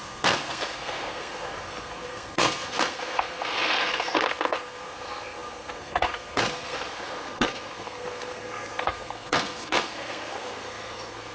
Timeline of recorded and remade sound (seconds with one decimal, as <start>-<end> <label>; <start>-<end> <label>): 0.0-11.3 remade

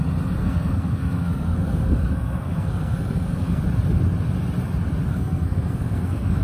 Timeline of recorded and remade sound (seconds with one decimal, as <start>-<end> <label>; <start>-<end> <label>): 0.0-0.4 recorded; 0.4-3.6 remade; 3.6-5.1 recorded; 5.1-6.4 remade